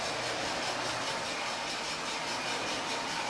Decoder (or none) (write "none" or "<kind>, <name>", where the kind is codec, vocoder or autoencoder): none